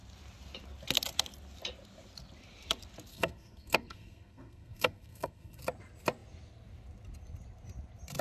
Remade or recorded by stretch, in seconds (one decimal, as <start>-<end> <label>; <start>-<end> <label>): 0.0-3.1 recorded; 3.1-5.6 remade; 5.6-8.2 recorded